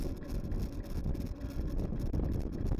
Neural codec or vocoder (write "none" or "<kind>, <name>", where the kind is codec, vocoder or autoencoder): none